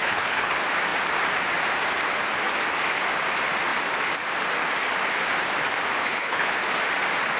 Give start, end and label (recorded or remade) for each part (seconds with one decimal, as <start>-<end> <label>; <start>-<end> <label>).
0.0-0.5 remade; 0.5-6.0 recorded; 6.0-6.5 remade; 6.5-7.4 recorded